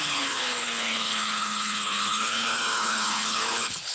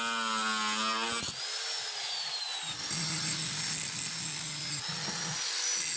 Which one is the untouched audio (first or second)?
second